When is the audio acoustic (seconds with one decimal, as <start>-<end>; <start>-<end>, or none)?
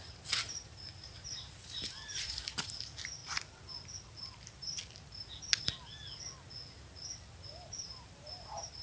3.2-7.5